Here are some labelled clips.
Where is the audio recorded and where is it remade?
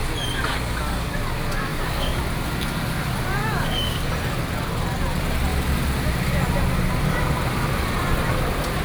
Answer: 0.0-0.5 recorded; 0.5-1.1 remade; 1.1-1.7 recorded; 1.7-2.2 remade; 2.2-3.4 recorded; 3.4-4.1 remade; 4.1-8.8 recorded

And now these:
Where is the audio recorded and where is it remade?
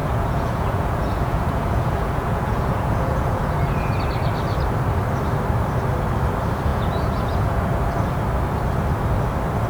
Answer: 0.0-4.0 remade; 4.0-6.7 recorded; 6.7-7.8 remade; 7.8-9.7 recorded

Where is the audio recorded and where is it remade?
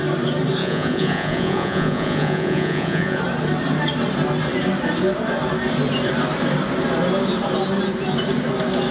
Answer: 0.0-0.6 recorded; 0.6-3.2 remade; 3.2-8.9 recorded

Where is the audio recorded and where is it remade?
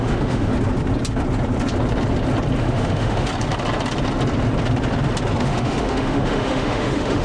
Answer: 0.0-0.5 remade; 0.5-2.6 recorded; 2.6-3.3 remade; 3.3-5.4 recorded; 5.4-7.2 remade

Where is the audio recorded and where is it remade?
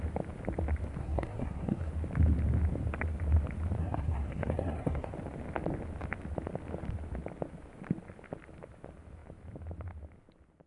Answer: 0.0-1.0 recorded; 1.0-1.9 remade; 1.9-3.8 recorded; 3.8-5.1 remade; 5.1-10.7 recorded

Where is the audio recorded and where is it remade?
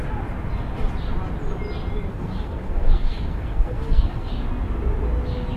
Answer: 0.0-2.1 recorded; 2.1-4.3 remade; 4.3-5.6 recorded